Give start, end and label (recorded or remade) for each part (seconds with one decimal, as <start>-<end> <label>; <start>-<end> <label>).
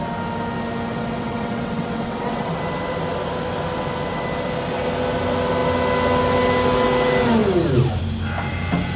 0.0-0.9 recorded; 0.9-2.6 remade; 2.6-9.0 recorded